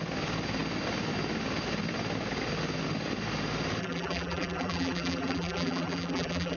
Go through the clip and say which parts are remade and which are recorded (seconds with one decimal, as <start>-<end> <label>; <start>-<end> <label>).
0.0-3.8 recorded; 3.8-6.6 remade